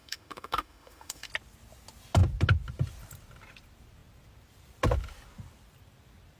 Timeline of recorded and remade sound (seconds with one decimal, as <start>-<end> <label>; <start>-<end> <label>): 0.0-1.3 remade; 1.3-6.4 recorded